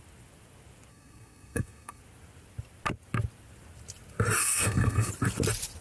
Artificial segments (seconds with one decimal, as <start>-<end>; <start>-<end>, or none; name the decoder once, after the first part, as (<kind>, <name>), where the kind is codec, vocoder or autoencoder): 0.9-2.0 (codec, SNAC); 4.4-5.1